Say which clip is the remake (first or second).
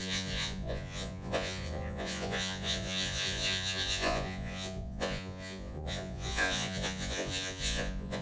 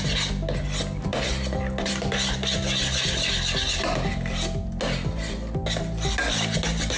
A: first